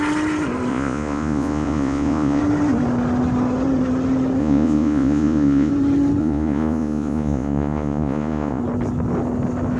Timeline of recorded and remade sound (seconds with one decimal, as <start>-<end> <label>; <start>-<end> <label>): 0.0-0.7 recorded; 0.7-2.4 remade; 2.4-4.4 recorded; 4.4-5.7 remade; 5.7-6.2 recorded; 6.2-8.6 remade; 8.6-9.8 recorded